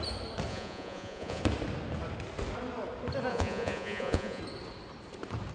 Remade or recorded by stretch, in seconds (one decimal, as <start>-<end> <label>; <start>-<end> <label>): 0.0-0.5 recorded; 0.5-1.4 remade; 1.4-3.3 recorded; 3.3-4.4 remade; 4.4-5.5 recorded